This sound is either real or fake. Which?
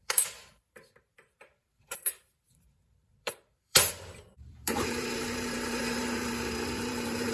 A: fake